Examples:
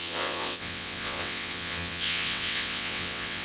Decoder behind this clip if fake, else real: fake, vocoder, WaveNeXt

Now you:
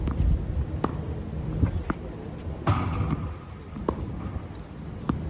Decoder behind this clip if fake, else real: real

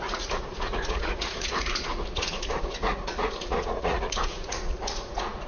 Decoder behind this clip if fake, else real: fake, vocoder, Vocos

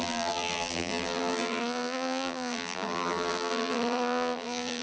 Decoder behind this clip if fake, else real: fake, vocoder, BigVGAN v2